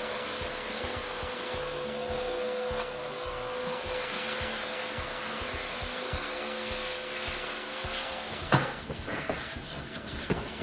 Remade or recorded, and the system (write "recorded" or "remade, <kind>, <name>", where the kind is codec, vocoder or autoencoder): remade, codec, SNAC